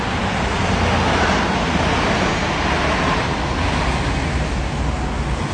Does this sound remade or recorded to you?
recorded